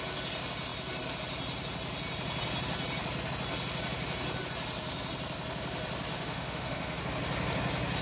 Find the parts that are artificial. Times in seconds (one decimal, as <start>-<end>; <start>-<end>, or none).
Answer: 6.1-7.0

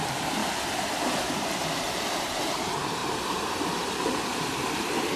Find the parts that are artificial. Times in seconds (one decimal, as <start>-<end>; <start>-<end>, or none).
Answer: none

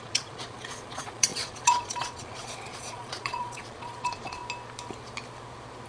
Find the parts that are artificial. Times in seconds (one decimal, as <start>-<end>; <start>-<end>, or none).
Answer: 0.0-4.4

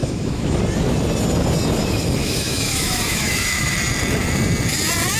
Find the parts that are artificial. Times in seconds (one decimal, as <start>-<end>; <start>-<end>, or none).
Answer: 0.0-0.6; 2.2-3.7

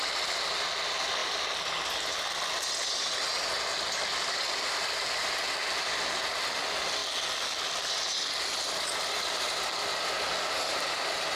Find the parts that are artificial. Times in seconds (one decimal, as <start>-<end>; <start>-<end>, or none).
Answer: none

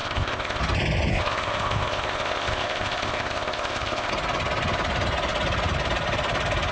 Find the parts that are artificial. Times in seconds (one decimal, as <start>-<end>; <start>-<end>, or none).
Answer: 0.0-0.6; 1.1-4.1

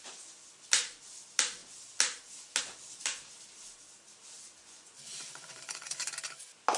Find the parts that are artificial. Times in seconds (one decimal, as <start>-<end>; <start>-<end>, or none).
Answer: 4.6-6.1